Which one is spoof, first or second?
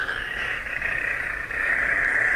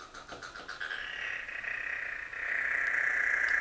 first